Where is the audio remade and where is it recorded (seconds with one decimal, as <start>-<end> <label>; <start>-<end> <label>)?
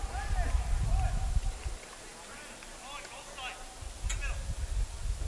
0.0-5.3 recorded